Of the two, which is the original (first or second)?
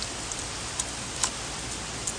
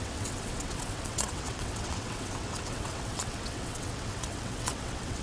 first